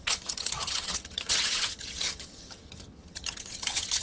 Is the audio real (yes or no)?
no